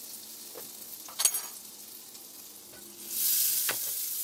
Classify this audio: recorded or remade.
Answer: recorded